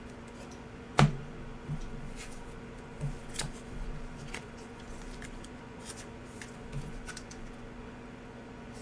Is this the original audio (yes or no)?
no